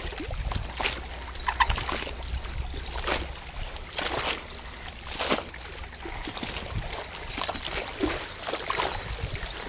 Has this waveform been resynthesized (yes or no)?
no